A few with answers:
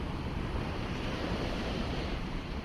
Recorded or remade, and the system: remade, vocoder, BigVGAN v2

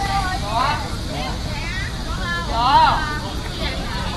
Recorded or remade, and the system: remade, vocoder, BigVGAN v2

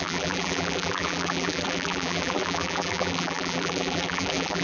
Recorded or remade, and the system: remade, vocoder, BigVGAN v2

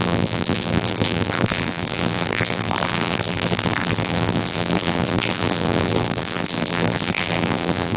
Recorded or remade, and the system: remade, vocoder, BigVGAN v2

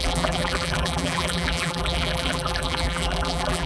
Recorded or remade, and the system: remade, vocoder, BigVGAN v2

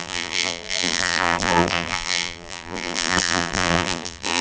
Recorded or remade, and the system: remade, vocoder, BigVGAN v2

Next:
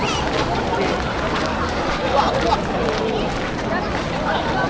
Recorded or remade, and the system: remade, vocoder, BigVGAN v2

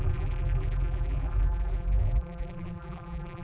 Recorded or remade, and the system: remade, vocoder, BigVGAN v2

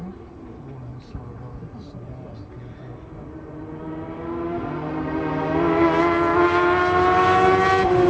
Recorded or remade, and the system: recorded